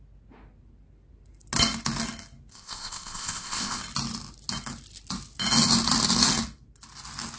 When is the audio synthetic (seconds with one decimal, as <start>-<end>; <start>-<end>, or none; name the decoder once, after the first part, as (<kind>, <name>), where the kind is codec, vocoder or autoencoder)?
2.5-3.8 (codec, ZipCodec)